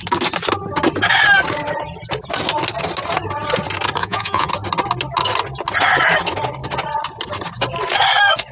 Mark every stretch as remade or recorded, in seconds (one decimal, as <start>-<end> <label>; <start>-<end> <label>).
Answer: 0.0-4.0 recorded; 4.0-4.5 remade; 4.5-8.5 recorded